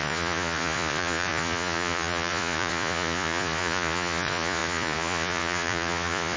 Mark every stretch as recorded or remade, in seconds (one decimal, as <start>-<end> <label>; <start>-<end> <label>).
0.0-6.4 remade